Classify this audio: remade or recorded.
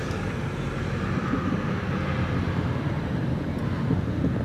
recorded